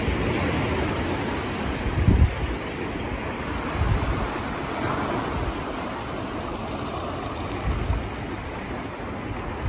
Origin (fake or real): real